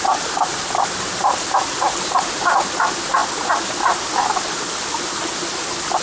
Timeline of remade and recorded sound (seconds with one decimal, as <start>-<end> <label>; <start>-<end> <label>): 0.0-6.0 recorded